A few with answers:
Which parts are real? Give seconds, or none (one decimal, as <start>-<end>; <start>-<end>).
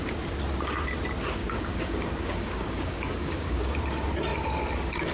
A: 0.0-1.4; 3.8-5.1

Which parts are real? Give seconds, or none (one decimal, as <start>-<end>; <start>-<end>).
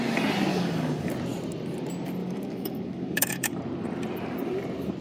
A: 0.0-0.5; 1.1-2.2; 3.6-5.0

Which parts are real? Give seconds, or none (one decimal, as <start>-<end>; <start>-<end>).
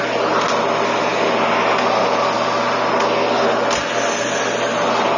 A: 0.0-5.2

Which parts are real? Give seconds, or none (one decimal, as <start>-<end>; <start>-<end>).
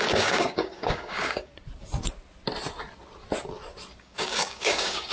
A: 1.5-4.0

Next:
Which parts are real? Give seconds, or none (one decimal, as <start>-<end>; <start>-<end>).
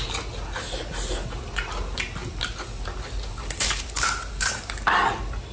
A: 0.0-5.5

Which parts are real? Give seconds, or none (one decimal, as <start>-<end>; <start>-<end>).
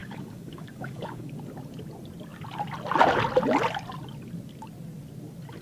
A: 1.3-5.6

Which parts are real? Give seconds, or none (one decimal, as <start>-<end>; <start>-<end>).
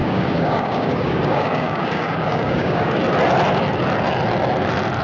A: 3.0-5.0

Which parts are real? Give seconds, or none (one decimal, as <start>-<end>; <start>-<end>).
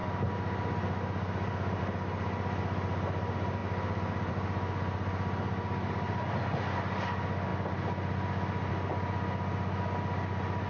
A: 0.0-10.7